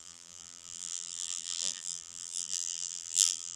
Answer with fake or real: fake